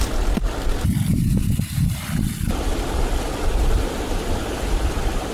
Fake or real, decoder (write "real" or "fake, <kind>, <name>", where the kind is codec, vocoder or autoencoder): real